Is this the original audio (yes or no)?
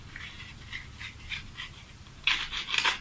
yes